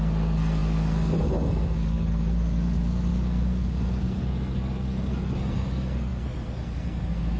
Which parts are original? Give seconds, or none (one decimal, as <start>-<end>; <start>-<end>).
none